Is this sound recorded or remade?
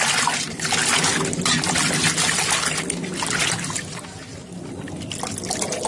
recorded